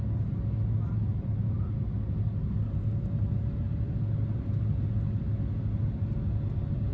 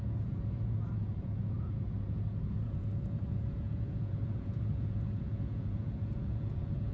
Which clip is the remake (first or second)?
second